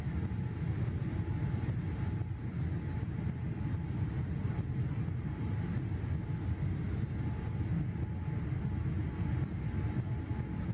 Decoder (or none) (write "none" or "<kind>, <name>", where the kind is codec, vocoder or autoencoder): none